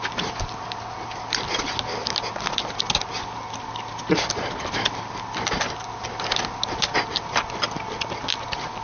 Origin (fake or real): real